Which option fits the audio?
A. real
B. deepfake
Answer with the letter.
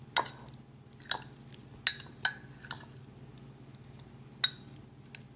A